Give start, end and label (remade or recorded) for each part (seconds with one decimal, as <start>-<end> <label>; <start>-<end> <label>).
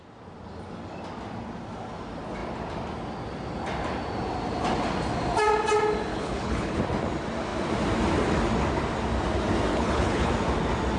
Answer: 0.0-6.1 recorded; 6.1-6.8 remade; 6.8-9.7 recorded; 9.7-10.3 remade; 10.3-11.0 recorded